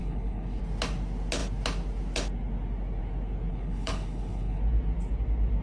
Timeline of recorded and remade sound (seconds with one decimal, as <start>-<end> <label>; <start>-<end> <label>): 0.0-0.6 remade; 0.6-3.5 recorded; 3.5-4.6 remade; 4.6-5.6 recorded